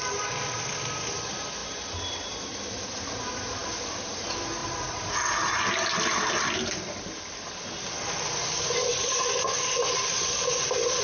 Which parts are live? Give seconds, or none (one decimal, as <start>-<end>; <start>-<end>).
0.0-11.0